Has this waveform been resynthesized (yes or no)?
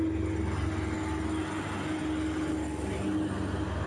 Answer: no